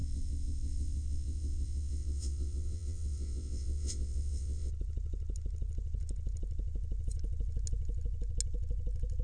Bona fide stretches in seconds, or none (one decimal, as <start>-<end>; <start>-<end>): 4.7-9.2

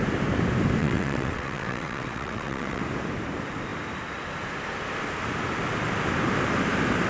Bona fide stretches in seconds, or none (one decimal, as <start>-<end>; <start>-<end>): 0.0-0.8; 2.8-7.1

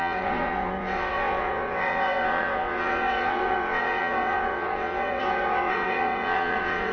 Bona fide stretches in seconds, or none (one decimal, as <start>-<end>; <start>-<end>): none

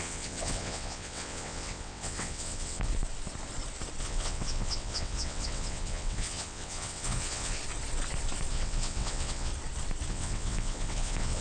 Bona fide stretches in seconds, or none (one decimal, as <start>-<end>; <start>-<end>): 2.9-4.0; 7.6-8.5; 9.5-10.1

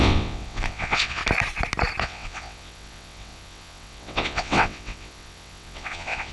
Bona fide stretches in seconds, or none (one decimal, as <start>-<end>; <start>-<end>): 1.2-2.0

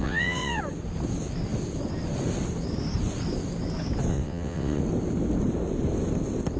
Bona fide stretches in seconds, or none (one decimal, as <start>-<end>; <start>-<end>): 0.6-4.1; 4.8-6.6